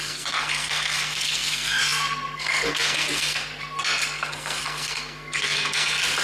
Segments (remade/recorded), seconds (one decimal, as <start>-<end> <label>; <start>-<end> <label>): 0.0-6.2 remade